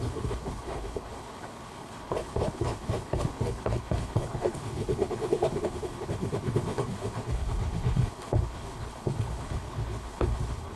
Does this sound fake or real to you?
fake